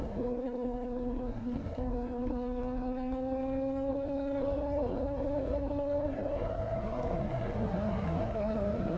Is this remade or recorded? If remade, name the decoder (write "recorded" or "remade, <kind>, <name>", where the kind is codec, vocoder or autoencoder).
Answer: remade, codec, SNAC